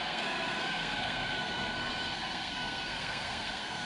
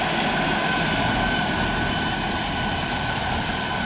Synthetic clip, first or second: first